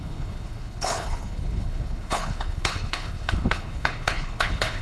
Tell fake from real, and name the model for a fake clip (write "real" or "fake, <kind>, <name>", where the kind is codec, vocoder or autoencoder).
fake, codec, HILCodec